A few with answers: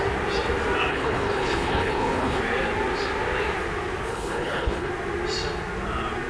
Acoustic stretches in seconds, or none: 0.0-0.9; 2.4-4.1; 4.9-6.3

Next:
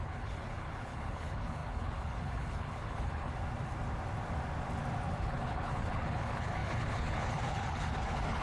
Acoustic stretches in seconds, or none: 3.3-5.2

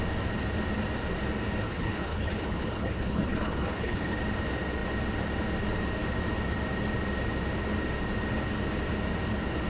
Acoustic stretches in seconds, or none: 0.0-1.6; 4.2-9.7

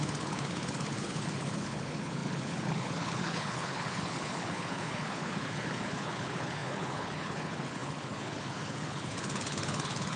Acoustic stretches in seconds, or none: none

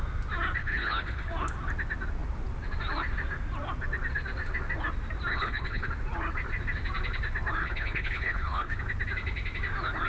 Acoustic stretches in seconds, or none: 0.0-0.6; 1.3-5.3; 5.9-7.6; 8.8-10.1

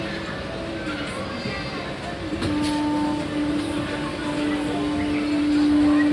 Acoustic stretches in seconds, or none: 0.0-6.1

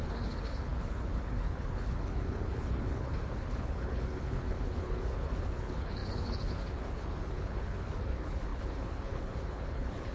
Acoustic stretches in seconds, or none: none